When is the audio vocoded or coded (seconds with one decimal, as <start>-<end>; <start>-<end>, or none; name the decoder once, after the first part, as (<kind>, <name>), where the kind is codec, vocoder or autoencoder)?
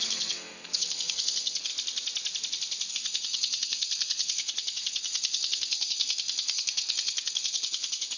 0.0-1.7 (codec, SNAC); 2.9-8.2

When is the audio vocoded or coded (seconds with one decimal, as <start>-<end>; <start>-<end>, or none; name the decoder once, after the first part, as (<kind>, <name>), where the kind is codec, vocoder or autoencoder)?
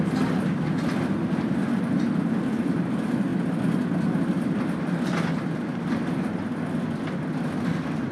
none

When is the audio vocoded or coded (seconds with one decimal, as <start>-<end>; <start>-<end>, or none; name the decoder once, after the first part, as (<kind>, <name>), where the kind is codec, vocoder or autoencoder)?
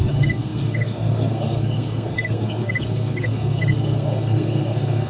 0.0-5.1 (codec, SNAC)